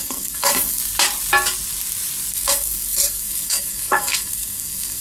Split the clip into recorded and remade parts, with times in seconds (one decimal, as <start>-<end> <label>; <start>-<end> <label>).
0.0-0.8 remade; 0.8-2.3 recorded; 2.3-5.0 remade